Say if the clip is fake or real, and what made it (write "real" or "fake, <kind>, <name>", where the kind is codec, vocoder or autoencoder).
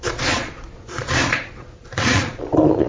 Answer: fake, vocoder, Vocos